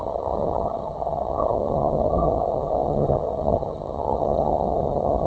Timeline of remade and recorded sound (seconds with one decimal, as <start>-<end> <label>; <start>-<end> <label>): 0.0-5.3 remade